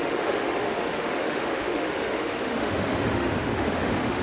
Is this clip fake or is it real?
fake